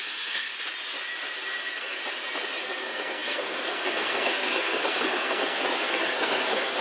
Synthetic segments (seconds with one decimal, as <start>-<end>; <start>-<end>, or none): 0.0-0.5; 1.6-2.0; 2.6-6.8